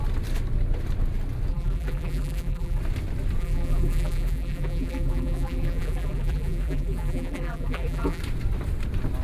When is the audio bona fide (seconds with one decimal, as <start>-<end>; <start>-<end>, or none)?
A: 0.0-1.5; 2.8-3.4; 8.2-9.2